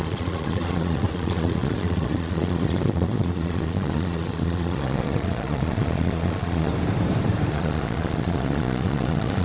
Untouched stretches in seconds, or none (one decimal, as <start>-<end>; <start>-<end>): 6.7-7.5